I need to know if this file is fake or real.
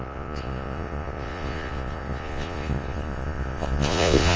fake